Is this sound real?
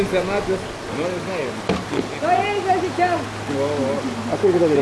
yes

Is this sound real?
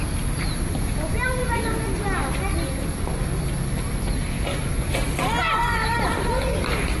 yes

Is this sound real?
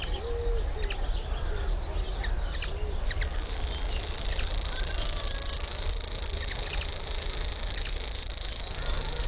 yes